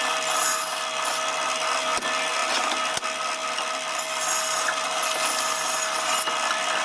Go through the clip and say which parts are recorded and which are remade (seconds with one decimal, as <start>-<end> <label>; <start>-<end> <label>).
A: 0.0-6.8 recorded